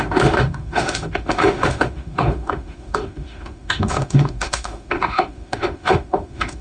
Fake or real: fake